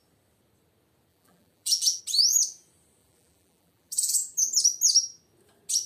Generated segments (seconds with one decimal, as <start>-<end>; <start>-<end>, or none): 1.1-2.0; 3.0-4.4